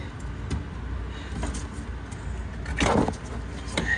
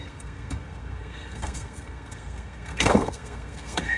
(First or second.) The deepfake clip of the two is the second